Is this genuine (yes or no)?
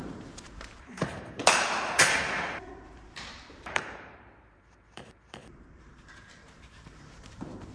no